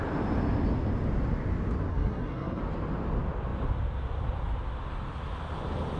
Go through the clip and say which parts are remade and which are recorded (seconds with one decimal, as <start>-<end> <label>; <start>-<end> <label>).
0.0-1.9 recorded; 1.9-2.6 remade; 2.6-6.0 recorded